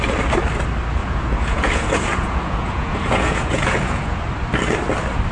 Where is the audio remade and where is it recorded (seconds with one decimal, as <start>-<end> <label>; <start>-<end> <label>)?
0.0-1.0 recorded; 1.0-4.2 remade; 4.2-5.3 recorded